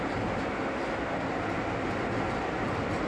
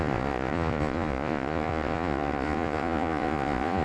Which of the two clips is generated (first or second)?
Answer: second